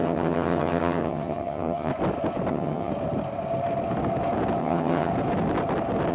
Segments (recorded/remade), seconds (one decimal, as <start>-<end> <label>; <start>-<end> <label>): 0.0-1.9 remade; 1.9-2.5 recorded; 2.5-2.9 remade; 2.9-4.6 recorded; 4.6-5.1 remade; 5.1-6.1 recorded